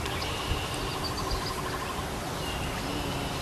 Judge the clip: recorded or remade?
recorded